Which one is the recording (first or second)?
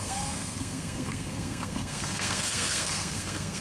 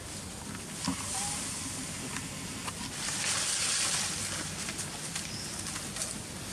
second